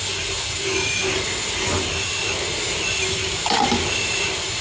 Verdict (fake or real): real